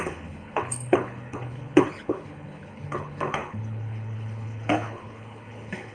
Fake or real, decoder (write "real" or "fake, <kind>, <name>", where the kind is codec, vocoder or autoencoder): fake, codec, HILCodec